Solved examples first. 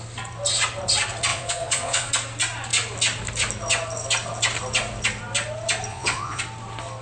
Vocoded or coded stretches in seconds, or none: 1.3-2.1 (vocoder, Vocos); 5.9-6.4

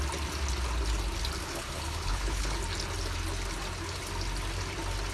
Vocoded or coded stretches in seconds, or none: 1.4-2.6 (codec, HILCodec)

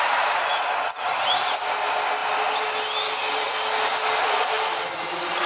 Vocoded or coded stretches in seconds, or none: none

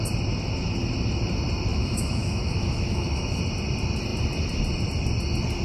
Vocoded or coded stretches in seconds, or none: 1.7-3.4 (autoencoder, DAC-VAE)

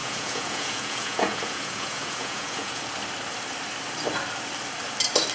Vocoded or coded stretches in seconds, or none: 0.0-2.8 (vocoder, Vocos)

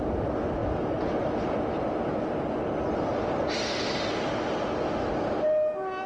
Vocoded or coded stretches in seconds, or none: 0.6-4.3 (vocoder, BigVGAN v2)

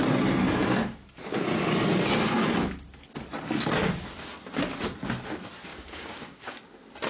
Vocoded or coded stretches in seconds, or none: 5.7-6.6 (codec, DAC)

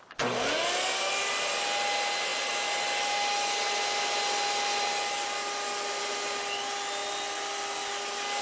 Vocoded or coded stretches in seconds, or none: none